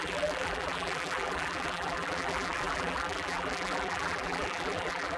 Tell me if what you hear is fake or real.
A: fake